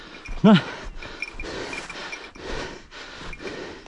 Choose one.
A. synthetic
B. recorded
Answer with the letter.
B